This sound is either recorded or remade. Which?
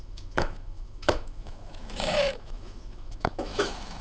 remade